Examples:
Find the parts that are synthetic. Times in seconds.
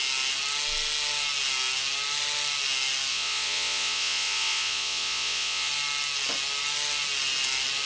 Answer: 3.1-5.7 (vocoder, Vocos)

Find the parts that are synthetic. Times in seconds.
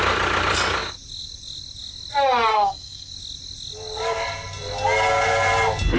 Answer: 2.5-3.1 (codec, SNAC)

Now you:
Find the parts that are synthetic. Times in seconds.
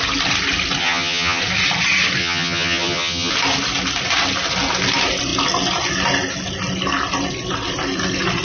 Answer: 0.8-1.4 (vocoder, HiFi-GAN); 2.2-3.3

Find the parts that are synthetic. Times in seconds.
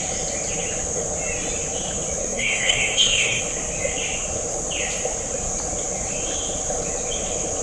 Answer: 2.2-3.4 (codec, SNAC)